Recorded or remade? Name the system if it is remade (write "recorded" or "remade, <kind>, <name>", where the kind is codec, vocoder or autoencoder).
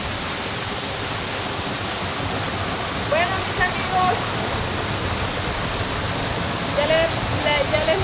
recorded